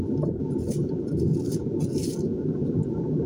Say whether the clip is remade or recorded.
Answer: recorded